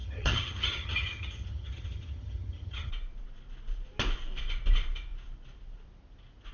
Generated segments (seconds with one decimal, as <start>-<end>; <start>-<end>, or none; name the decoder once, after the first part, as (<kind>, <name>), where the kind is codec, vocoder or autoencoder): 0.0-2.9 (vocoder, HiFi-GAN)